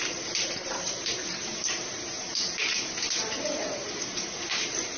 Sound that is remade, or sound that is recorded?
remade